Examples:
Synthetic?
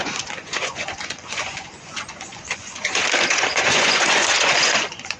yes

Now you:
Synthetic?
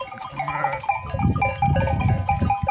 no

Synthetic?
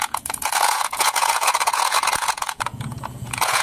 yes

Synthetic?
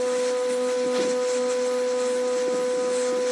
no